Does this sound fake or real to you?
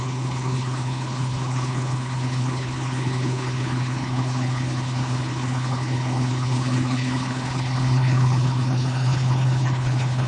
fake